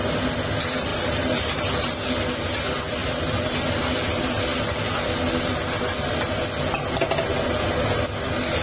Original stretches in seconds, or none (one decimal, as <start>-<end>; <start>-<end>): 0.0-0.9; 1.6-3.0; 3.5-8.6